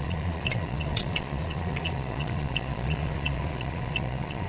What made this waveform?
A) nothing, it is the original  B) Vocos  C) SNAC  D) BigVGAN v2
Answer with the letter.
B